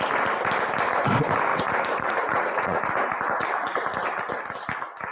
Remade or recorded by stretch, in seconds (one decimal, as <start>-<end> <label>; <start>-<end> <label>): 0.0-1.5 recorded; 1.5-2.8 remade; 2.8-5.1 recorded